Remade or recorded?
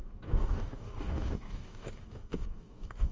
remade